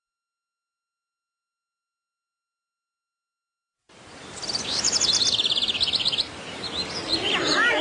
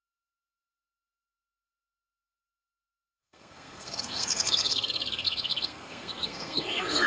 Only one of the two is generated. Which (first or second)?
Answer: second